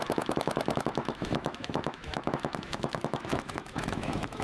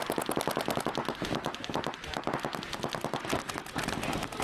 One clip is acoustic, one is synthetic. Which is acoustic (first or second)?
second